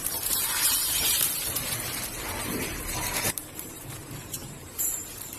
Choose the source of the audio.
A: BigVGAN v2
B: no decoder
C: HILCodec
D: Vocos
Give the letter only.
A